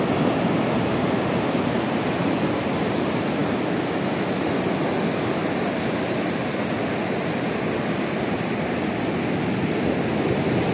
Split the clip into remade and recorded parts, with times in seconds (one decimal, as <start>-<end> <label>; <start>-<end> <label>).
0.0-10.7 recorded